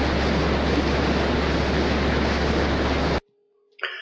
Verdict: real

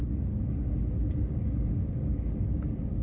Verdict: fake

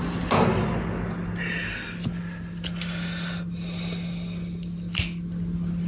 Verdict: real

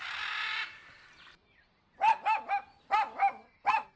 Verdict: real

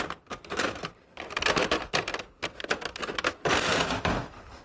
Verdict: real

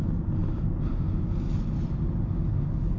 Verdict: real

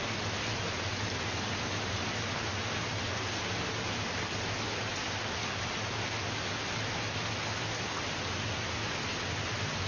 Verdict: real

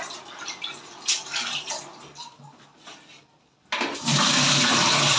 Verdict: real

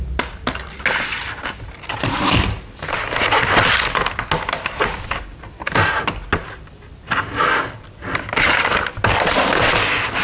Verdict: real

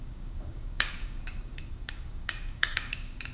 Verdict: fake